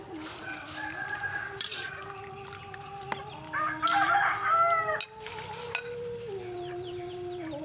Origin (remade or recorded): recorded